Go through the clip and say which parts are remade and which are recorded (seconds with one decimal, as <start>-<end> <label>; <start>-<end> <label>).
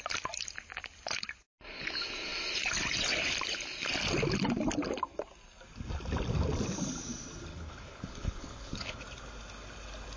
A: 0.0-7.5 recorded; 7.5-9.0 remade; 9.0-10.2 recorded